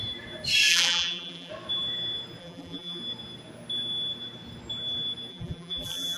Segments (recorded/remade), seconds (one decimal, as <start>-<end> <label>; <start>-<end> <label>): 0.0-0.7 recorded; 0.7-1.5 remade; 1.5-2.4 recorded; 2.4-3.0 remade; 3.0-5.3 recorded; 5.3-6.2 remade